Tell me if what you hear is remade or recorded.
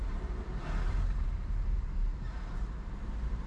remade